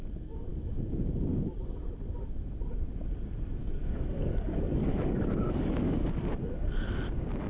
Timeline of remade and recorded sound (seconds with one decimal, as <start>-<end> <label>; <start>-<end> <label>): 0.0-3.6 recorded; 3.6-6.3 remade; 6.3-7.5 recorded

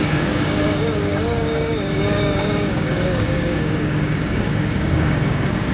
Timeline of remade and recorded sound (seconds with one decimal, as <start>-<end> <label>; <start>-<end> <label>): 0.0-5.7 remade

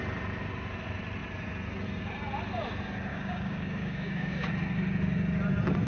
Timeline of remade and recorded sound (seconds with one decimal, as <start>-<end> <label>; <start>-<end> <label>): 0.0-3.1 recorded; 3.1-4.5 remade; 4.5-5.9 recorded

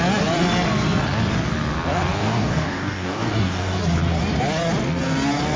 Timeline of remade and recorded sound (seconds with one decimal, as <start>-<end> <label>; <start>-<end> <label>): 0.0-2.2 recorded; 2.2-3.8 remade; 3.8-5.6 recorded

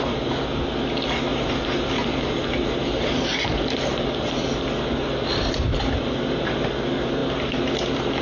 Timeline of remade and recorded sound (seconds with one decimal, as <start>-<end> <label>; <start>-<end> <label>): 0.0-8.2 recorded

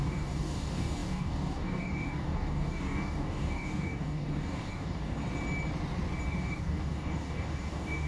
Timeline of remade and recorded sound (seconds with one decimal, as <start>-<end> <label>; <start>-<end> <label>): 0.0-5.2 remade; 5.2-6.3 recorded; 6.3-8.1 remade

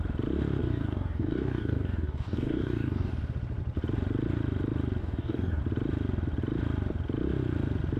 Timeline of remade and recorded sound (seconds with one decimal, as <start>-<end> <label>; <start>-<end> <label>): 0.0-0.6 recorded; 0.6-3.1 remade; 3.1-5.0 recorded; 5.0-5.6 remade; 5.6-8.0 recorded